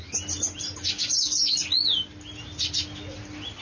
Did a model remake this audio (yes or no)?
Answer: no